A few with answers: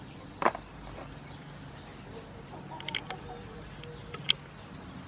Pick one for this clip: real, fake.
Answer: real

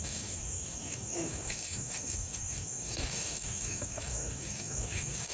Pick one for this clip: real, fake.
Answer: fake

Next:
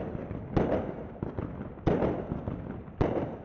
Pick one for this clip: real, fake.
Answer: real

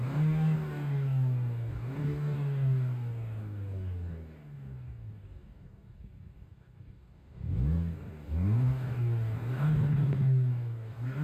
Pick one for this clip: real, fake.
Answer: fake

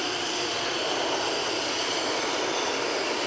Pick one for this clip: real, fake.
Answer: real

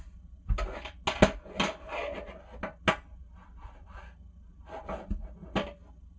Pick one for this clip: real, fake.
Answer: real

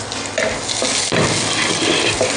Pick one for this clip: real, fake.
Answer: real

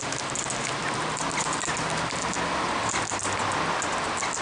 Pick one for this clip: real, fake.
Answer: real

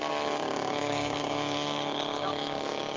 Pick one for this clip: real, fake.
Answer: fake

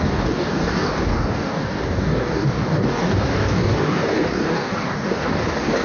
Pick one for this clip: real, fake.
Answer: fake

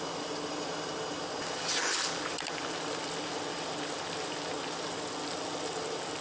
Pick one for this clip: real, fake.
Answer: real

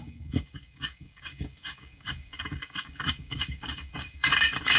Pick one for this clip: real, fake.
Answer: fake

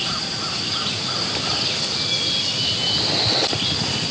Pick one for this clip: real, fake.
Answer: real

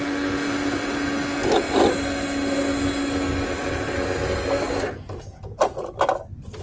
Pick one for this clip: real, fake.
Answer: real